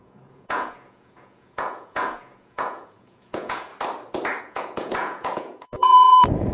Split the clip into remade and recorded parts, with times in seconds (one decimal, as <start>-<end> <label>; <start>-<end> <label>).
0.0-3.7 remade; 3.7-4.4 recorded; 4.4-6.5 remade